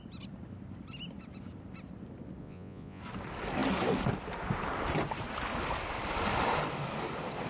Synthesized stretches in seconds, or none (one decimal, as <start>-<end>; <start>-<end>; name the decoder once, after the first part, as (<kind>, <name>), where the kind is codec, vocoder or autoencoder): 2.4-3.0 (vocoder, Vocos)